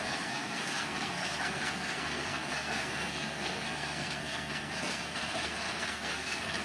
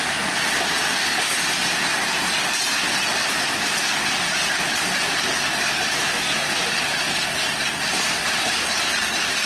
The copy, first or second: first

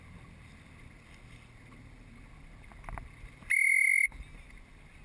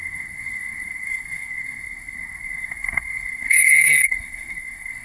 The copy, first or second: second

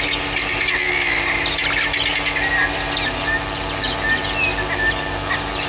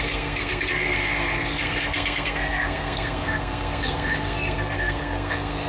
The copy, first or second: second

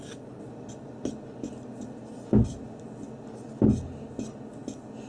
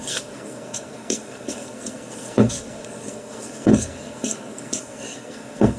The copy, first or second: second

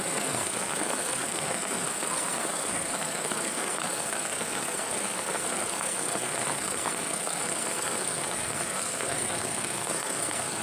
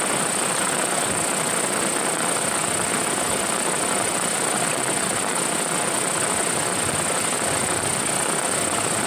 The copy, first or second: first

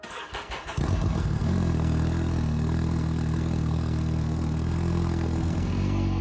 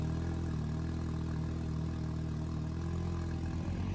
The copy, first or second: first